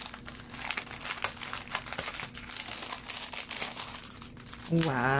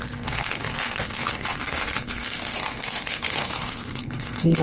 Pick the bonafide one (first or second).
first